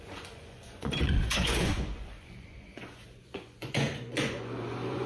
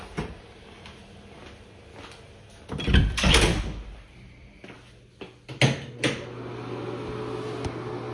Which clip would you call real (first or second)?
second